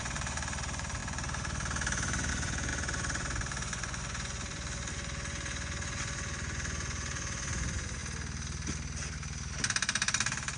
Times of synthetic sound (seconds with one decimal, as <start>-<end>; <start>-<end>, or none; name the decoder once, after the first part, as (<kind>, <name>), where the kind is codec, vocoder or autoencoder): 0.0-8.0 (vocoder, Vocos)